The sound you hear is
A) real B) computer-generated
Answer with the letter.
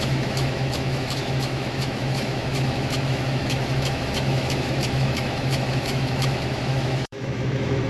B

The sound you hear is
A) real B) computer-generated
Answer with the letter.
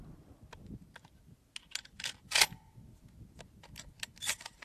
A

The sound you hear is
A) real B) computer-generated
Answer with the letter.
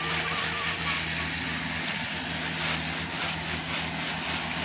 A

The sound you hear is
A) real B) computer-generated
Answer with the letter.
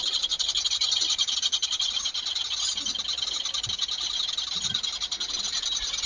A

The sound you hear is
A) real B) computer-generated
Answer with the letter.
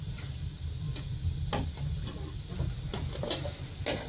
A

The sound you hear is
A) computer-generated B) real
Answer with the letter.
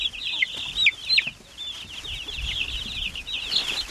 B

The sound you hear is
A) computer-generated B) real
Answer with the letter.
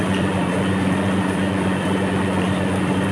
A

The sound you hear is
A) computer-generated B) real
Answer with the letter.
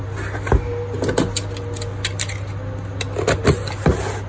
B